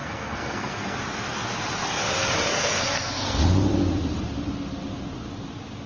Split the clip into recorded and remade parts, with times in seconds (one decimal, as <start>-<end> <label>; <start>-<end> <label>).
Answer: 0.0-1.0 remade; 1.0-2.5 recorded; 2.5-3.4 remade; 3.4-5.9 recorded